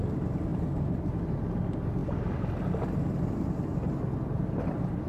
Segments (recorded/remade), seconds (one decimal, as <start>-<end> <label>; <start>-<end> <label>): 0.0-5.1 recorded

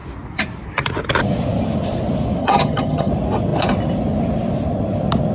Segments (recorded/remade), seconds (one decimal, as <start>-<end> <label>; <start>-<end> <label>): 0.0-2.4 recorded; 2.4-3.1 remade; 3.1-5.3 recorded

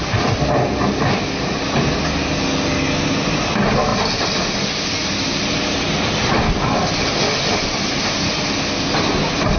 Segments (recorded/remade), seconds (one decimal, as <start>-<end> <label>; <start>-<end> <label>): 0.0-9.6 recorded

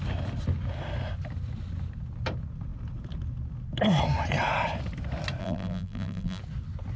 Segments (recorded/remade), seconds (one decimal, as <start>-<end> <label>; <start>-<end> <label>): 0.0-5.4 recorded; 5.4-6.4 remade; 6.4-7.0 recorded

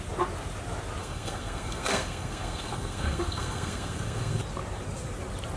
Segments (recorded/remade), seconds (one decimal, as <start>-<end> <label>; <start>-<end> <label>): 0.0-1.0 recorded; 1.0-4.4 remade; 4.4-5.6 recorded

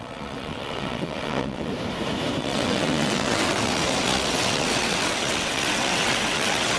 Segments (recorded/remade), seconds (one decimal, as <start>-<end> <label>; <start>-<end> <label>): 0.0-1.7 remade; 1.7-2.4 recorded; 2.4-6.8 remade

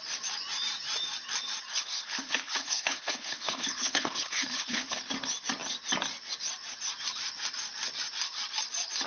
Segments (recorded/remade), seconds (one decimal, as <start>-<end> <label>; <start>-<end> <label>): 0.0-1.7 recorded; 1.7-5.0 remade; 5.0-9.1 recorded

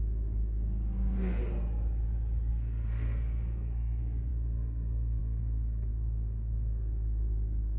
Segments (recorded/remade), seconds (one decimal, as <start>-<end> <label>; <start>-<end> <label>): 0.0-1.4 remade; 1.4-2.5 recorded; 2.5-7.8 remade